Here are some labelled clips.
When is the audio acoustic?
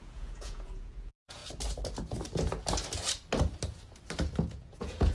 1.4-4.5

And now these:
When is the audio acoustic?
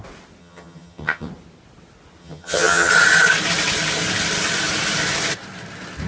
0.0-0.4; 1.3-2.2; 2.9-6.1